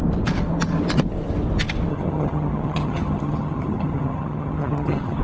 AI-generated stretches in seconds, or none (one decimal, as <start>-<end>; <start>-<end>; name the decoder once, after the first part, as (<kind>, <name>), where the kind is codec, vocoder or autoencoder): 1.9-5.2 (vocoder, HiFi-GAN)